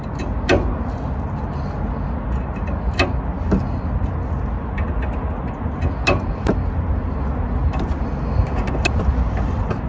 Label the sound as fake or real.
real